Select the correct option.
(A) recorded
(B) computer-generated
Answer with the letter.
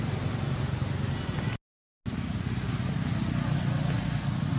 A